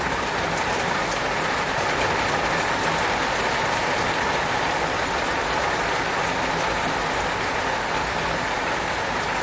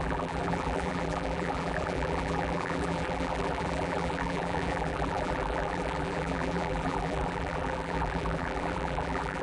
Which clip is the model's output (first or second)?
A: second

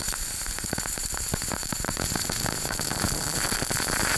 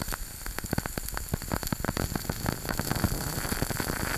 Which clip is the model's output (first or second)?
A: first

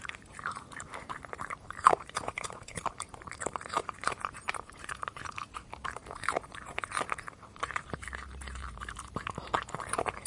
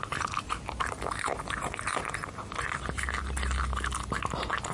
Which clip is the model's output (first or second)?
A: first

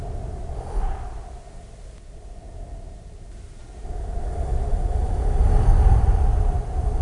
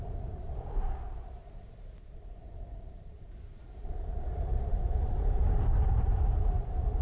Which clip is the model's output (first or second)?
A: second